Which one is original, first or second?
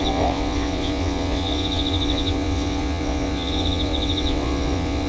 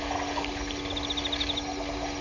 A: second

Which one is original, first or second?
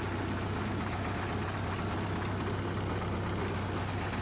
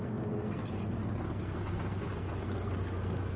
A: first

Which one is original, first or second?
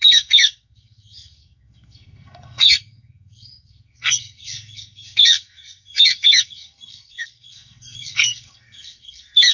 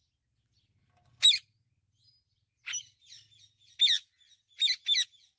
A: second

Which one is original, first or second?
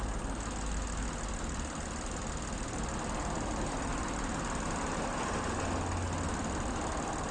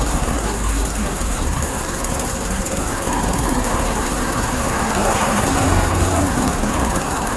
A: first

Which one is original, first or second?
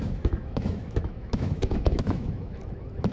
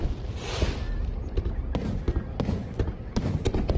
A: second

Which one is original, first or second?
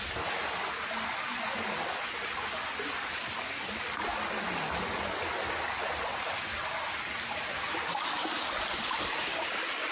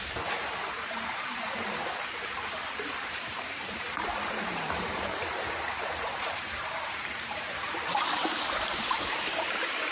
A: first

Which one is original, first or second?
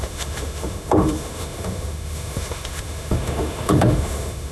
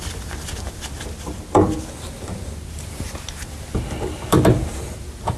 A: second